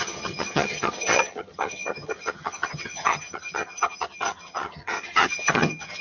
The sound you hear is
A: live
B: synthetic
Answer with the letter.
B